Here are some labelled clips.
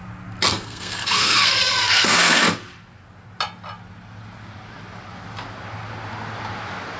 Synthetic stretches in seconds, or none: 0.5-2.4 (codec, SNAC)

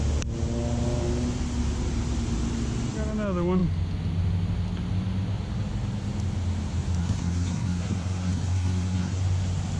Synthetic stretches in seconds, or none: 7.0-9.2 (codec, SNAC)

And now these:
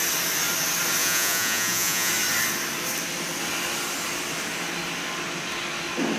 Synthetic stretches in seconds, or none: 1.0-2.1 (vocoder, Vocos)

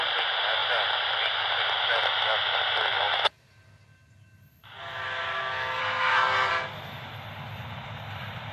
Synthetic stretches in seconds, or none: 5.8-6.5 (codec, SNAC)